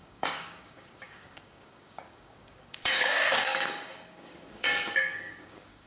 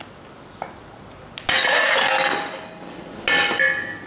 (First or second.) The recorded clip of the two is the second